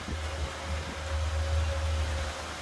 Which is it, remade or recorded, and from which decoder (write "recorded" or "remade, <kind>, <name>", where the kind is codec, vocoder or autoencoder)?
recorded